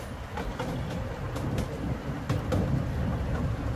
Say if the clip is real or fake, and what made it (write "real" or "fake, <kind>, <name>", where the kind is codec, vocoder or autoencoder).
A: real